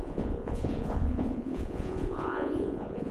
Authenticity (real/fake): fake